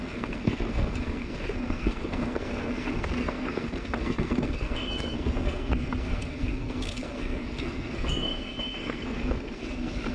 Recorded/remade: remade